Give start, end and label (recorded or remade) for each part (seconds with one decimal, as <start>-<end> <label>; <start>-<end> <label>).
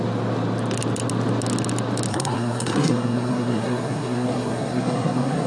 0.0-2.1 recorded; 2.1-5.5 remade